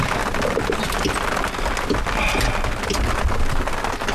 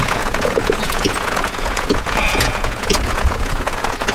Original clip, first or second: first